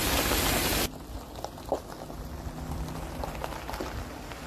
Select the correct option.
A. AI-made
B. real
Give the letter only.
B